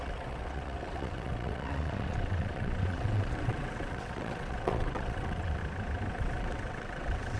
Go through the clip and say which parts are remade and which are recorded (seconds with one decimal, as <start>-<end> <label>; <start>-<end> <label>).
0.0-5.6 remade; 5.6-6.1 recorded; 6.1-7.4 remade